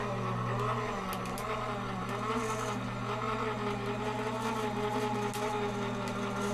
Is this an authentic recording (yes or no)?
yes